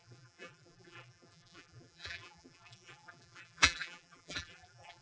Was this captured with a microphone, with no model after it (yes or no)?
no